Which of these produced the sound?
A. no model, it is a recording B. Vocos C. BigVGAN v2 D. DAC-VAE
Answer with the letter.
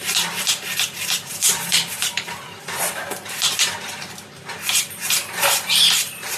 C